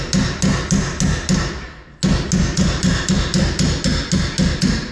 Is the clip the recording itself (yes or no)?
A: yes